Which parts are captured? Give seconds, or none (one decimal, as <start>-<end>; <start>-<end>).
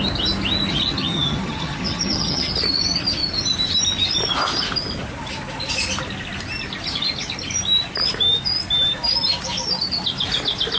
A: 0.0-0.7; 2.5-10.8